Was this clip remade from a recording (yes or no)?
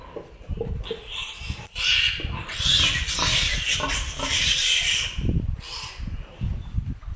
yes